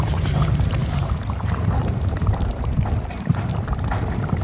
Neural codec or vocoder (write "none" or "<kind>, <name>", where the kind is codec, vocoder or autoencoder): vocoder, BigVGAN v2